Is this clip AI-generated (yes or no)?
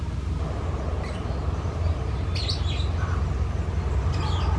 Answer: no